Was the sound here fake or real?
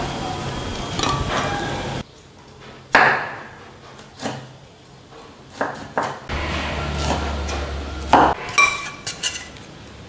real